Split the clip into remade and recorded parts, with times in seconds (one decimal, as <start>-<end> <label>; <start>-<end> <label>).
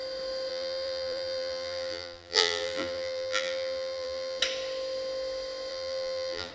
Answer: 0.0-0.5 recorded; 0.5-4.4 remade; 4.4-5.7 recorded; 5.7-6.5 remade